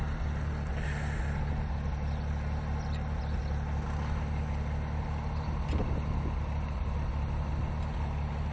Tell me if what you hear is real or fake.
real